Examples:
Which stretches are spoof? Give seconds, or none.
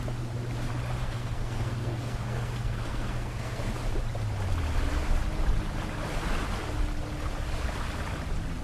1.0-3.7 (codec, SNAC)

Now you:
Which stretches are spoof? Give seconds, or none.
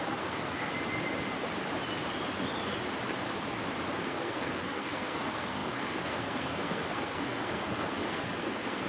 0.0-0.7 (codec, SNAC); 4.0-8.9